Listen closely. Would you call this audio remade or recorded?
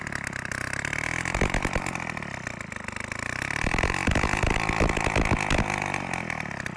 recorded